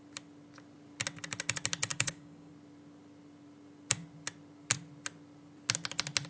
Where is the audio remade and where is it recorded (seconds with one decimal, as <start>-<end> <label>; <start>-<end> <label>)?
0.0-1.9 recorded; 1.9-2.5 remade; 2.5-6.3 recorded